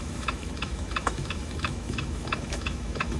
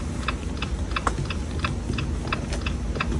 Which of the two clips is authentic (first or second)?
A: second